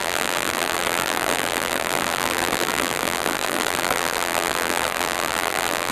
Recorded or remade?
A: remade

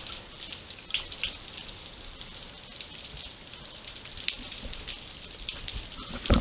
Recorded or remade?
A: recorded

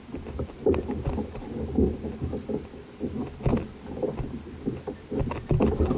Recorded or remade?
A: recorded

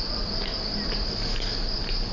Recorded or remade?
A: recorded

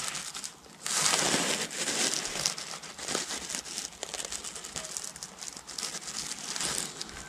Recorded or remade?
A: recorded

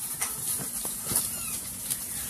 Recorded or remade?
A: recorded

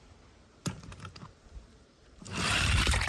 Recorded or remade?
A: remade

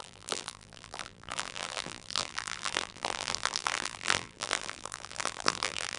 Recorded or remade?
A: remade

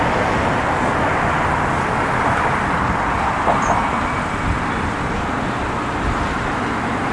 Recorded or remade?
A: recorded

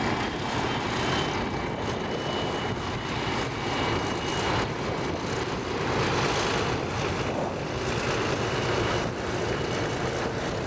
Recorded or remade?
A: recorded